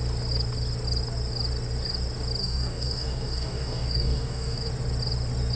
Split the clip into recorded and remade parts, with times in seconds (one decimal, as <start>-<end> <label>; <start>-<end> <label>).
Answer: 0.0-2.4 recorded; 2.4-4.7 remade; 4.7-5.6 recorded